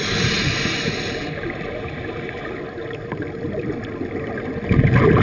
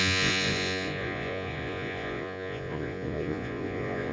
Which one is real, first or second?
first